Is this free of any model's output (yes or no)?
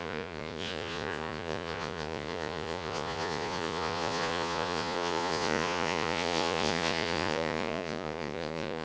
no